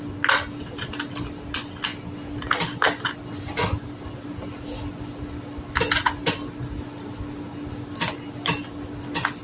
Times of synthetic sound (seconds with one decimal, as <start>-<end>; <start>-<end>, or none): none

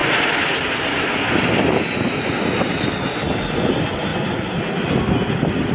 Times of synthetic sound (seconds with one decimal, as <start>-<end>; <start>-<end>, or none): none

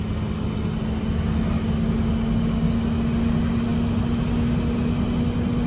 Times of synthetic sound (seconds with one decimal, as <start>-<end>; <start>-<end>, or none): none

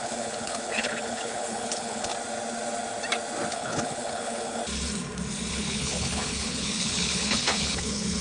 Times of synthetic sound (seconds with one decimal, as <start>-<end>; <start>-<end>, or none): 0.0-2.1; 3.5-4.6; 5.5-8.2

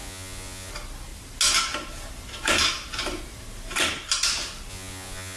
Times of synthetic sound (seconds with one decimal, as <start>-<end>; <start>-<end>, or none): 0.0-0.7; 4.7-5.4